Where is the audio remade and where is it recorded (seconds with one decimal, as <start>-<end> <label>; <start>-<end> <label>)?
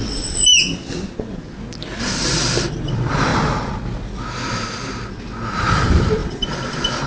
0.0-0.5 remade; 0.5-2.0 recorded; 2.0-3.3 remade; 3.3-5.6 recorded; 5.6-7.1 remade